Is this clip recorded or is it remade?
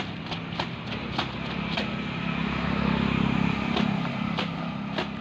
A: recorded